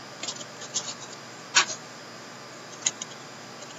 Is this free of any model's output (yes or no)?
yes